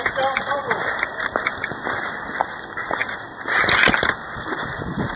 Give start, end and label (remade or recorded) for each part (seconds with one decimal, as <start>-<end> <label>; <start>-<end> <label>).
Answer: 0.0-5.2 recorded